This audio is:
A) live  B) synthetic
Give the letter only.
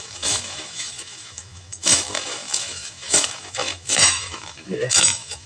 B